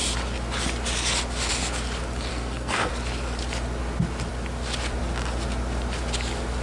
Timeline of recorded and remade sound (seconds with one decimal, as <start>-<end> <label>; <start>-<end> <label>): 0.0-2.3 recorded; 2.3-2.9 remade; 2.9-6.6 recorded